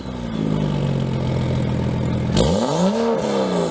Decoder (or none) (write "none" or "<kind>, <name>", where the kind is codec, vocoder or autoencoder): none